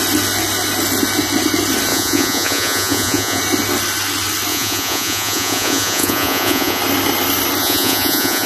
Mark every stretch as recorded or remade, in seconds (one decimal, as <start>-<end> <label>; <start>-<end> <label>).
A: 0.0-1.9 recorded; 1.9-3.4 remade; 3.4-4.5 recorded; 4.5-6.8 remade; 6.8-7.6 recorded; 7.6-8.5 remade